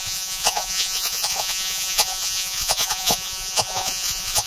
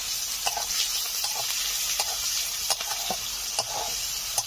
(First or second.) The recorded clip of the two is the second